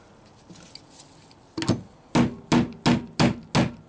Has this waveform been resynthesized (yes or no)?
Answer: no